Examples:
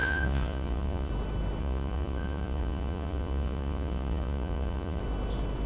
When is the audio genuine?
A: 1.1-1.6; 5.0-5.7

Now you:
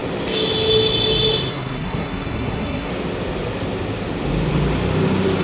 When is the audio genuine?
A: 0.0-1.5; 2.9-5.4

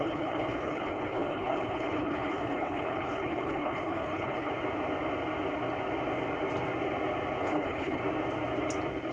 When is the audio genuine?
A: 4.5-7.4; 8.0-9.1